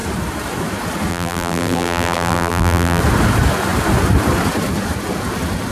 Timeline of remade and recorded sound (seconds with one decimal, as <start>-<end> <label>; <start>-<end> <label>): 0.0-1.1 recorded; 1.1-3.0 remade; 3.0-5.7 recorded